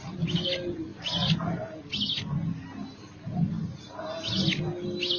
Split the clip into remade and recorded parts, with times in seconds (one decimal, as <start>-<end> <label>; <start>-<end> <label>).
0.0-5.2 recorded

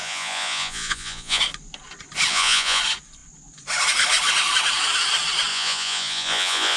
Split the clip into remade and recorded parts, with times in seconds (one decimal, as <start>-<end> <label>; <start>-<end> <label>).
0.0-1.4 remade; 1.4-2.3 recorded; 2.3-2.8 remade; 2.8-5.5 recorded; 5.5-6.8 remade